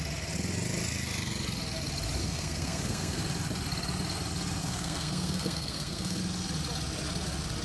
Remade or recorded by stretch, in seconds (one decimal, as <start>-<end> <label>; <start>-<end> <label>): 0.0-2.2 recorded; 2.2-3.2 remade; 3.2-4.6 recorded; 4.6-6.2 remade; 6.2-7.6 recorded